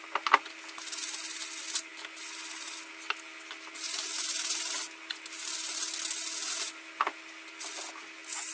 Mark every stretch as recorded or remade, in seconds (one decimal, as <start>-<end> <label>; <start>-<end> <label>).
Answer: 0.0-8.5 recorded